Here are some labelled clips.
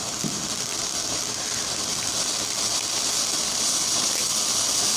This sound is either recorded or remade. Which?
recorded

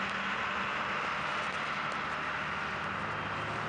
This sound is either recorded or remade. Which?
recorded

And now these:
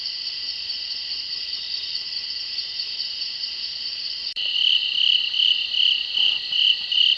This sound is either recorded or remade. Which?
remade